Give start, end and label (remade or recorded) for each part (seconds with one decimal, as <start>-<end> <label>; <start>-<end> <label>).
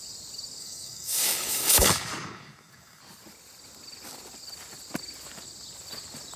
0.0-0.6 recorded; 0.6-3.0 remade; 3.0-6.4 recorded